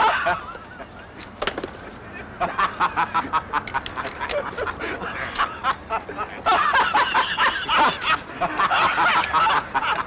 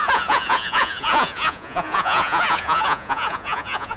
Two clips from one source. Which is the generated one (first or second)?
second